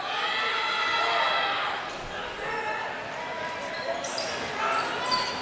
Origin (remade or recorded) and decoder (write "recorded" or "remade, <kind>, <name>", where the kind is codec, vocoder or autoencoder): recorded